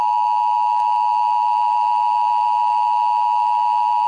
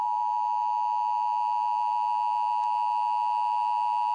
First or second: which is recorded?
second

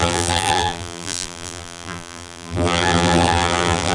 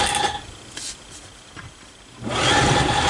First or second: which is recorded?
second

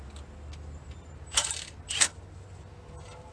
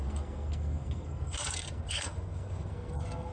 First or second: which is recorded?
first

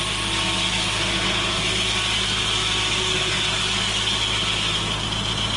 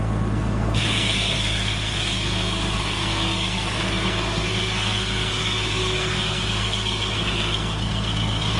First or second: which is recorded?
first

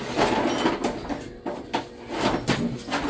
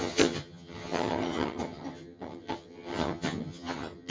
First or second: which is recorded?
first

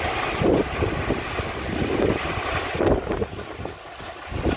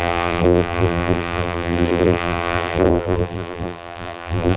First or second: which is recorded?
first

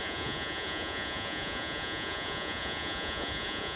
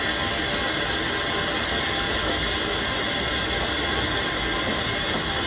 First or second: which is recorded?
second